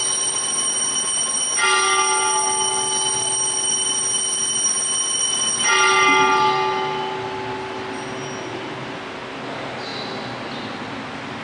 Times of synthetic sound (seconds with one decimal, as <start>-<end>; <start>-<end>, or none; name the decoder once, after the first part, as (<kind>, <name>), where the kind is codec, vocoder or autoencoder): none